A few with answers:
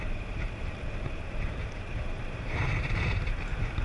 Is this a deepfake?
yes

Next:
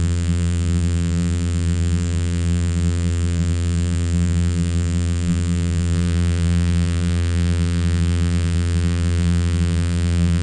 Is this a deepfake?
yes